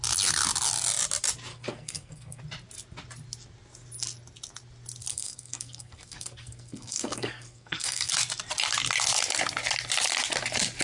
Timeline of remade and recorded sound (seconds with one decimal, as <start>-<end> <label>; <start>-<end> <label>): 0.0-1.5 recorded; 1.5-2.4 remade; 2.4-5.1 recorded; 5.1-8.1 remade; 8.1-10.8 recorded